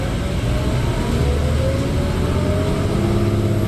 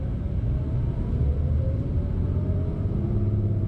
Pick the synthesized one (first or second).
second